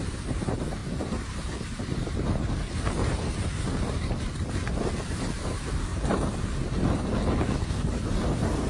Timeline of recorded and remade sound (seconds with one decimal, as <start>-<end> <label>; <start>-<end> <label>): 0.0-7.1 remade; 7.1-7.9 recorded; 7.9-8.7 remade